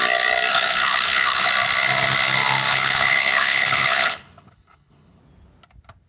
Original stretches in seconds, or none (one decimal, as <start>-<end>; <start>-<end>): 0.0-0.5; 1.5-2.7; 5.2-6.1